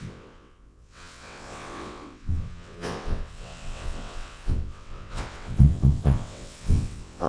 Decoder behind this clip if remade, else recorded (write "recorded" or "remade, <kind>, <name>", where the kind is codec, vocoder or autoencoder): remade, vocoder, WaveNeXt